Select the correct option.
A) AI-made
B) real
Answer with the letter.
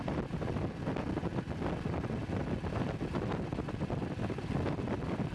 B